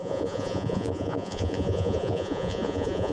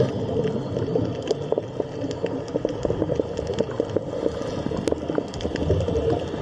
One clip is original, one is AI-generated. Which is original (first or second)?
second